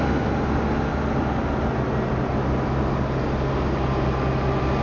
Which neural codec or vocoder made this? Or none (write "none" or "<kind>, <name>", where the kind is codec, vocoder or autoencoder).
none